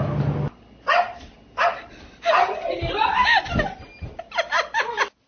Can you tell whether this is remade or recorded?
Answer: recorded